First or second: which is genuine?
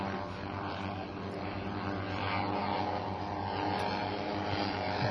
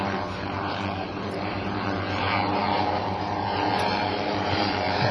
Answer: first